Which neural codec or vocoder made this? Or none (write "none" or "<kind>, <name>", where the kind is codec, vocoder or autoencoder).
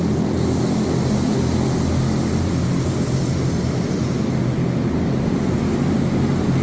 none